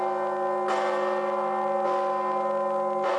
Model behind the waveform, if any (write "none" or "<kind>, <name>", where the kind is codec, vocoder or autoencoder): none